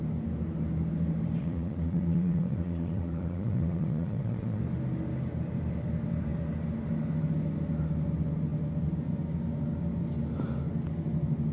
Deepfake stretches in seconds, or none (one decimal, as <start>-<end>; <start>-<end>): 1.4-4.6